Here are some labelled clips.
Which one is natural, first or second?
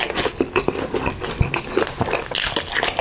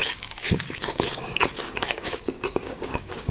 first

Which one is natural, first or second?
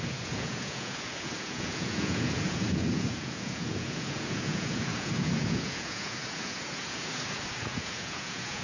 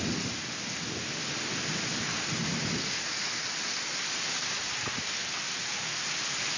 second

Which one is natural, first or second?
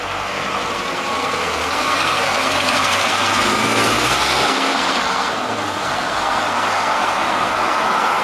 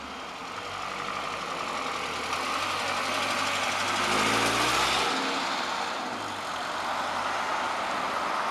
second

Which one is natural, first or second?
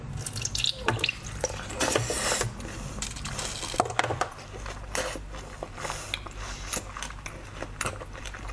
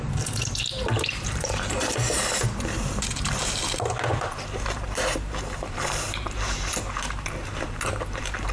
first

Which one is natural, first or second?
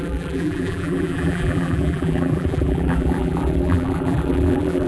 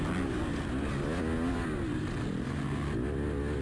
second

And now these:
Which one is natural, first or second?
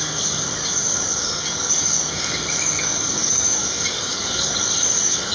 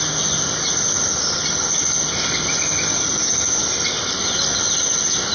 second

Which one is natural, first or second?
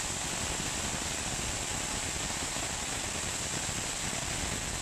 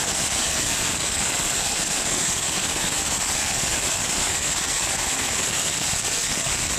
first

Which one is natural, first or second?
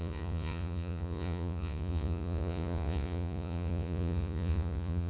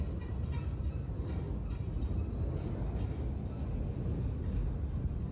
second